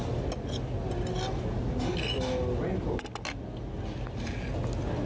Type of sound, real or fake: real